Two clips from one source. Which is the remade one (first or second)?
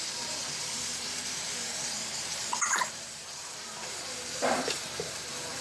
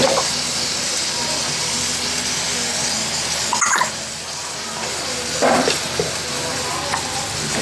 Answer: first